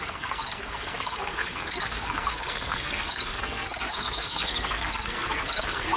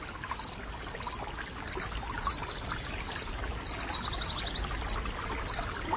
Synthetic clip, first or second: first